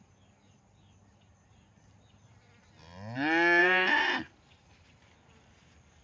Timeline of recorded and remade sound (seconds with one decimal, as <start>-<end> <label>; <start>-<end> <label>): 0.0-3.6 recorded; 3.6-5.6 remade; 5.6-6.0 recorded